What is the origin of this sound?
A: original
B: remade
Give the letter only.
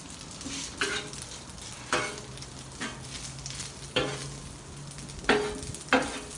A